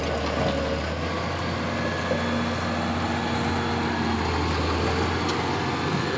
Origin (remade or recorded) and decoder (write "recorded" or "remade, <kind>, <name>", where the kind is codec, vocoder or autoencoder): recorded